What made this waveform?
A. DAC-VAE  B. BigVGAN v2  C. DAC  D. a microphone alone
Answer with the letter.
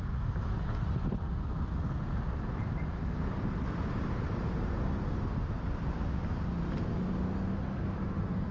D